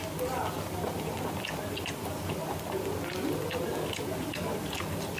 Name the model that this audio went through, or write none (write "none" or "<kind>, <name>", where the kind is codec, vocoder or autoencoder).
none